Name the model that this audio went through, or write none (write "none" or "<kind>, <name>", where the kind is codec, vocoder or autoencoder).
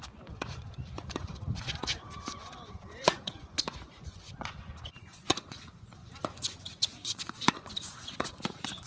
vocoder, Vocos